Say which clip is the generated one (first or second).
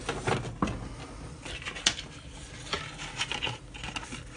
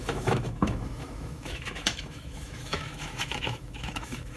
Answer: second